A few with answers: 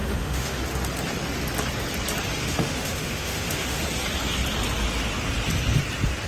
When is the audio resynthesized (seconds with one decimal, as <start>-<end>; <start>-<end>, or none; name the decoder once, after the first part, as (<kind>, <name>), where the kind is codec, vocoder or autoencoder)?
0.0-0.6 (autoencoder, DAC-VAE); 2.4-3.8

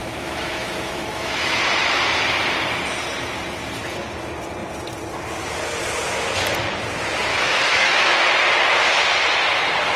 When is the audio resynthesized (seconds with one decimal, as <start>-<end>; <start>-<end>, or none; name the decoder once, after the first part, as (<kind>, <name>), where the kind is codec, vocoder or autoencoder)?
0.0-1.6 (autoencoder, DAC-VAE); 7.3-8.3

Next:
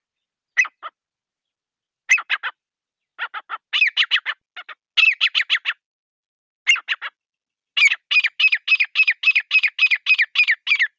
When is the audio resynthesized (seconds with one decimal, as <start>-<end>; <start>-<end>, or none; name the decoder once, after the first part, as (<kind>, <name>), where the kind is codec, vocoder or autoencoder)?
none

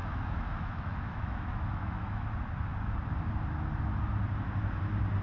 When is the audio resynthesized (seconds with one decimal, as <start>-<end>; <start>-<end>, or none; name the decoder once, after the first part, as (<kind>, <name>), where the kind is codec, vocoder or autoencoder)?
0.0-2.3 (autoencoder, DAC-VAE)